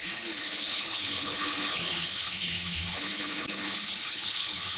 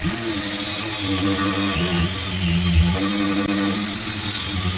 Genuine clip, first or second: second